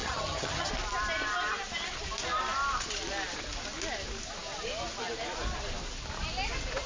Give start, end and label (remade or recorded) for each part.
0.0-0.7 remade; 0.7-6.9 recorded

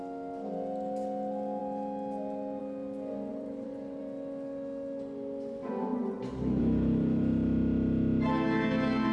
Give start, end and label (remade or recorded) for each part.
0.0-3.3 recorded; 3.3-4.0 remade; 4.0-5.9 recorded; 5.9-6.6 remade; 6.6-9.1 recorded

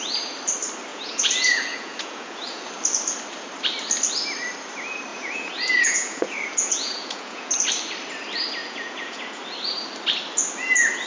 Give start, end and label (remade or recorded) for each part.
0.0-0.9 recorded; 0.9-2.6 remade; 2.6-5.1 recorded; 5.1-7.5 remade; 7.5-8.6 recorded; 8.6-9.4 remade; 9.4-11.1 recorded

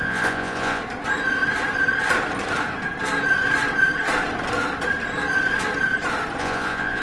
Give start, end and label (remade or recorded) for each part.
0.0-0.8 remade; 0.8-6.4 recorded; 6.4-7.0 remade